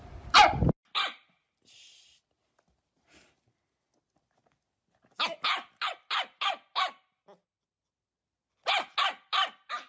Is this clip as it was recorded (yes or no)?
yes